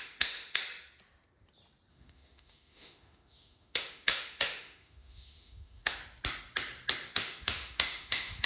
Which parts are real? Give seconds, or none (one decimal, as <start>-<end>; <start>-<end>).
0.6-1.9; 6.0-7.1